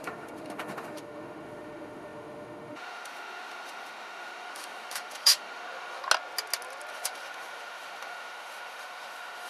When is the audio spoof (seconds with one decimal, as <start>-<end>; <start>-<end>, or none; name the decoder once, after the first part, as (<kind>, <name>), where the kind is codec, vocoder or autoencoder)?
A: 0.0-6.0 (autoencoder, DAC-VAE); 6.9-9.5